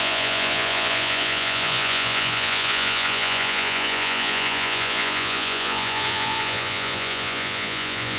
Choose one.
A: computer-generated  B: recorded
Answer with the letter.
A